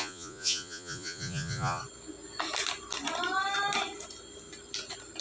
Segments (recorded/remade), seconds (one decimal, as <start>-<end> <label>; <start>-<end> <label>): 0.0-1.8 remade; 1.8-5.2 recorded